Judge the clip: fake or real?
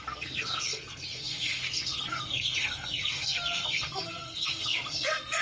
fake